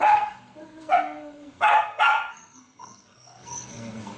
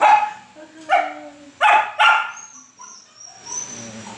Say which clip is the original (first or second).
second